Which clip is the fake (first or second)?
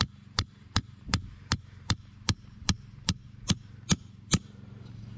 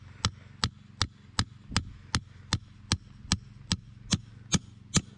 first